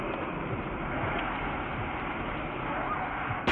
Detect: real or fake real